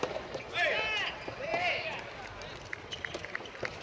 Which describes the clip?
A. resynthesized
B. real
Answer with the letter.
B